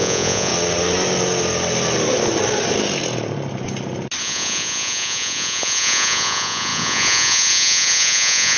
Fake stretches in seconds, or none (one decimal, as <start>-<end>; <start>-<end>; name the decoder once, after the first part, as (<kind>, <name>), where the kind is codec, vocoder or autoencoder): 0.0-0.5 (vocoder, Vocos); 4.2-8.6